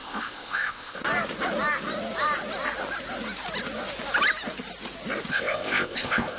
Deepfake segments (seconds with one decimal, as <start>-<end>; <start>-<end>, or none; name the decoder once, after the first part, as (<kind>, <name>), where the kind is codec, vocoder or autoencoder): 0.0-1.0 (codec, ZipCodec); 5.3-6.4